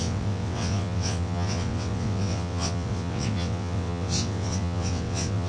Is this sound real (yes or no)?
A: no